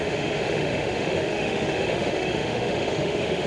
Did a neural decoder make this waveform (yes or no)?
yes